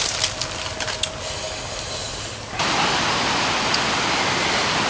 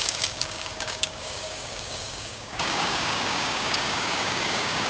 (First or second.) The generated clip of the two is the second